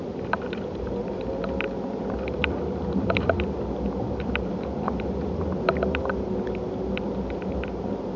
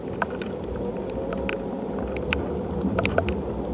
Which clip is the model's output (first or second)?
second